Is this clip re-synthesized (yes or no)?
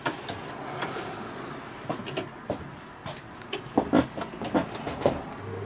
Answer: no